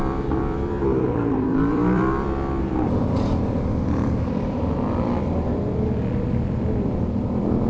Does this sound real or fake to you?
fake